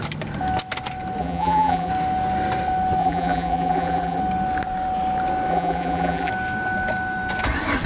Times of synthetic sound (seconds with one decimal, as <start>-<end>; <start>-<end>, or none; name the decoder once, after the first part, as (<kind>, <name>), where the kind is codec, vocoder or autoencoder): 1.2-1.9 (vocoder, BigVGAN v2); 3.0-4.2; 5.5-6.3

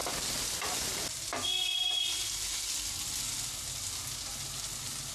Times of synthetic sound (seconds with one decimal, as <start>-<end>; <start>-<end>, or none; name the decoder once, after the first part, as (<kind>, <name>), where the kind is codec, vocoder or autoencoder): 0.0-2.0 (vocoder, BigVGAN v2)